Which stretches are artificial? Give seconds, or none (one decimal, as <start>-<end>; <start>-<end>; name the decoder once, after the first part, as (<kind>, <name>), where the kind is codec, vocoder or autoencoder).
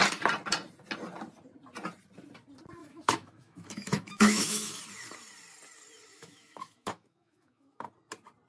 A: 2.8-4.8 (autoencoder, DAC-VAE); 6.1-7.9